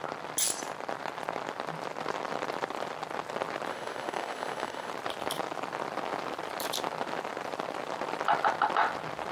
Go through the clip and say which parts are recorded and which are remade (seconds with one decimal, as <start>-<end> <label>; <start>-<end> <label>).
0.0-3.7 recorded; 3.7-4.9 remade; 4.9-9.3 recorded